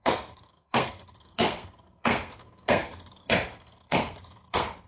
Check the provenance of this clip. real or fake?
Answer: fake